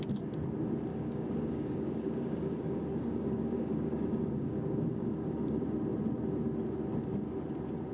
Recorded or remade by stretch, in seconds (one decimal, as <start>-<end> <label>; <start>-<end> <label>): 0.0-0.9 recorded; 0.9-5.6 remade; 5.6-7.9 recorded